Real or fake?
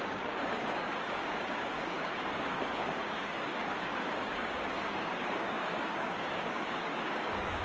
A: fake